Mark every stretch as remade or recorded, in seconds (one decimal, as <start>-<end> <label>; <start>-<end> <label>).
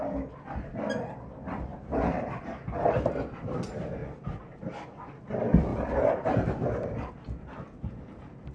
0.0-1.7 recorded; 1.7-2.4 remade; 2.4-5.7 recorded; 5.7-7.1 remade; 7.1-8.5 recorded